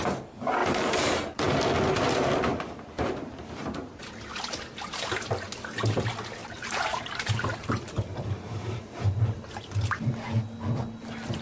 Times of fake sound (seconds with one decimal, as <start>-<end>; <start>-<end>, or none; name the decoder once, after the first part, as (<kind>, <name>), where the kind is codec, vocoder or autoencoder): 0.6-1.4 (vocoder, BigVGAN v2); 2.5-3.1; 6.4-7.7; 8.1-9.0